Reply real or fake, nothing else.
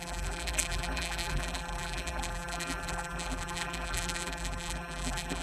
fake